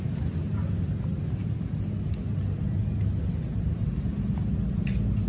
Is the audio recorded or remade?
recorded